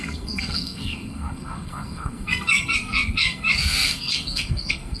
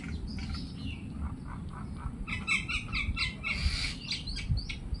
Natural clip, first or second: second